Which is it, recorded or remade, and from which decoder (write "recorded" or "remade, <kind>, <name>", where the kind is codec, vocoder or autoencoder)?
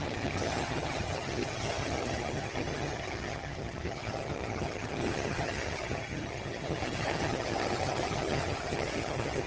remade, vocoder, HiFi-GAN